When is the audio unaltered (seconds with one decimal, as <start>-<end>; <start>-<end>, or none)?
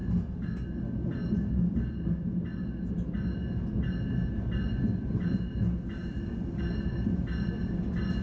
0.0-8.2